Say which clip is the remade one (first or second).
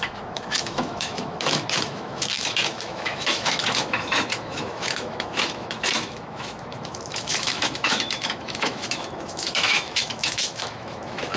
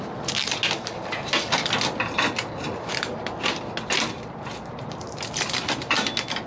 first